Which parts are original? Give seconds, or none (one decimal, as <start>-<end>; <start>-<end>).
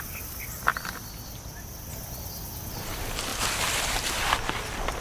0.0-5.0